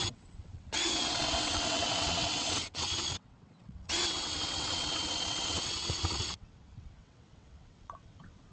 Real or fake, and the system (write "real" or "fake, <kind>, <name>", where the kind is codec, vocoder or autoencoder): fake, vocoder, WaveNeXt